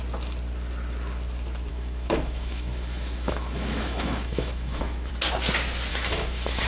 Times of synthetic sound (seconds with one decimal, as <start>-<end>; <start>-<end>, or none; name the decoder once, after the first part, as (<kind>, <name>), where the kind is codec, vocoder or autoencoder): 1.7-5.1 (autoencoder, DAC-VAE); 5.9-6.7